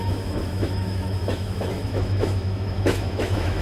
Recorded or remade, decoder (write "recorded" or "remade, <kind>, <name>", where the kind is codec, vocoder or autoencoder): remade, autoencoder, DAC-VAE